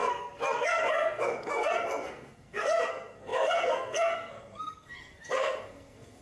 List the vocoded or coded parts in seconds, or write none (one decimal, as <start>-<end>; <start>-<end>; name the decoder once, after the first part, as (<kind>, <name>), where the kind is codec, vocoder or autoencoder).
0.0-6.2 (codec, SNAC)